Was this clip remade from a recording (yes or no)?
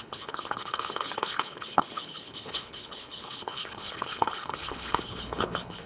yes